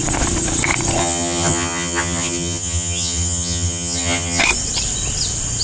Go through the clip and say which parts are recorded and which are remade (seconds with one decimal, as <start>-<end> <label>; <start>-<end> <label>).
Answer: 0.0-1.0 recorded; 1.0-4.4 remade; 4.4-5.6 recorded